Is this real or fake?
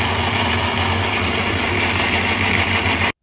real